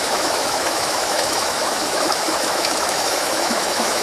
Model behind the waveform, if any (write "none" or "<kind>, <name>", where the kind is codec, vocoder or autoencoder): autoencoder, DAC-VAE